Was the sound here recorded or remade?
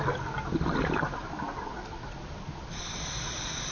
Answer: recorded